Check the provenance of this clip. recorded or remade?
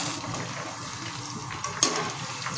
recorded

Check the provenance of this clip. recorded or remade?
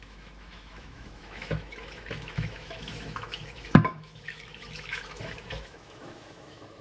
remade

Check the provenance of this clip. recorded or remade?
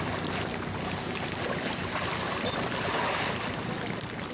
recorded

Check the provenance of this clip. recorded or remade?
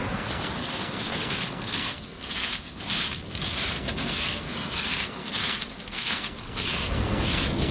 remade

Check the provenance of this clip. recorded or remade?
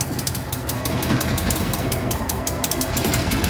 remade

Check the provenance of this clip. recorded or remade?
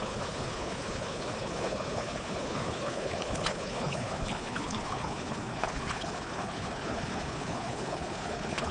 remade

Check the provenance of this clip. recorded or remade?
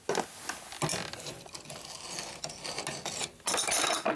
recorded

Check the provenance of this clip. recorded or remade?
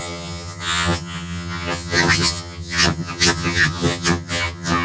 remade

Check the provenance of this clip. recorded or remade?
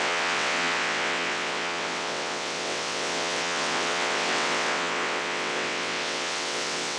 remade